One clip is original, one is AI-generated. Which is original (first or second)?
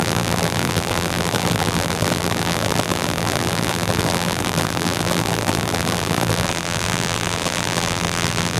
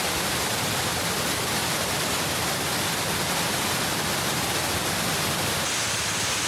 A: second